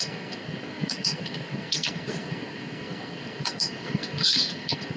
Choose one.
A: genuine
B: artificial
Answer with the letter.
B